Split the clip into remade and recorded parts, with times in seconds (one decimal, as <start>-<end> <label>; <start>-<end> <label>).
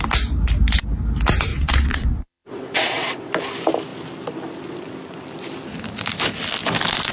0.0-1.5 recorded; 1.5-3.3 remade; 3.3-7.1 recorded